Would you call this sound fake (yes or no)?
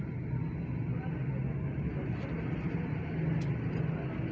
no